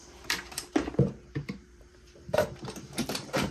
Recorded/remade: remade